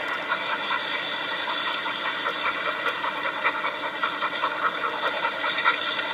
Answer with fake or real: real